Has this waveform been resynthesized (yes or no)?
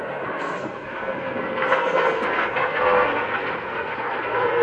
yes